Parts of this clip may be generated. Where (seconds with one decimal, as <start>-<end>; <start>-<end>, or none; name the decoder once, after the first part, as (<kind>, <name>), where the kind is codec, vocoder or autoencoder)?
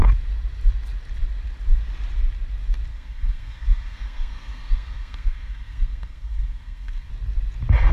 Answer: 2.9-7.1 (codec, SNAC)